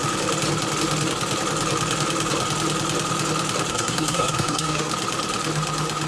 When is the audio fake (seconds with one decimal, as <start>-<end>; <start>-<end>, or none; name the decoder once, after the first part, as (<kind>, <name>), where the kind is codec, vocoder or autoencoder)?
3.7-4.9 (codec, SNAC)